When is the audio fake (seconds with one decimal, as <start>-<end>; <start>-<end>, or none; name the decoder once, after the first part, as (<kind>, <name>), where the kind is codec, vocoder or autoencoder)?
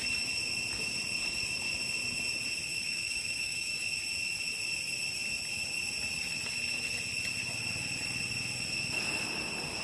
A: 2.7-3.8 (autoencoder, DAC-VAE)